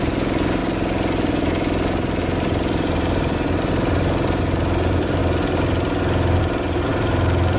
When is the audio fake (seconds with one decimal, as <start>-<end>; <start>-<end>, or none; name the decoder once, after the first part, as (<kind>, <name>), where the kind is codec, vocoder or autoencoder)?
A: 0.0-0.6 (vocoder, BigVGAN v2); 2.2-5.2; 6.4-7.6